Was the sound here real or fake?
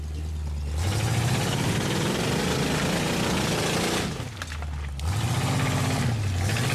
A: real